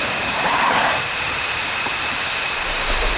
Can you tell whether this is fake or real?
fake